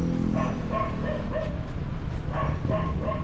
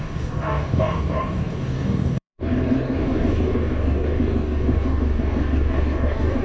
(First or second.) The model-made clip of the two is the second